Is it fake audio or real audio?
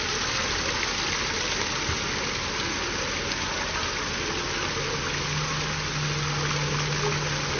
real